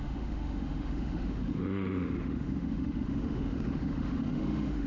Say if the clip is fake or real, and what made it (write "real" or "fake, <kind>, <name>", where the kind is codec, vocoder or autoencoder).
fake, autoencoder, DAC-VAE